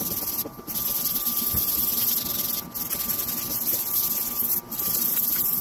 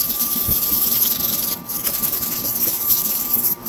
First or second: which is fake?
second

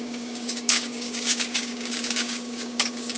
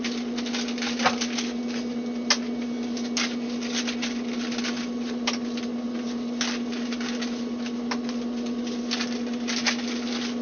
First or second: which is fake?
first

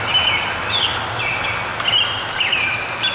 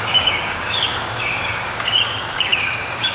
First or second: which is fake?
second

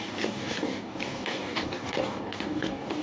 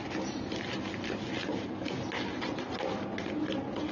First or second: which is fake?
first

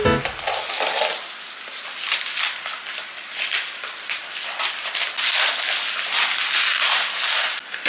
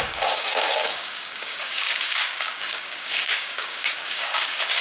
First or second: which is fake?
second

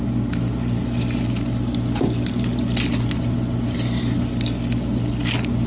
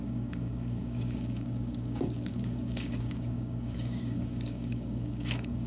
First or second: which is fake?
second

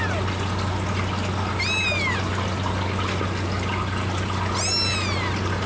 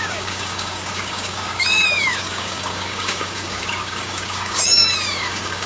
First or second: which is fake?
second